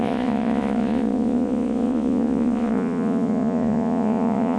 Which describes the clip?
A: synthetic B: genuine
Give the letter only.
A